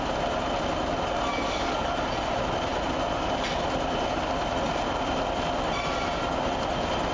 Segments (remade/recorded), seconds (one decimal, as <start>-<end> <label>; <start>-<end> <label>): 0.0-1.3 recorded; 1.3-2.0 remade; 2.0-7.1 recorded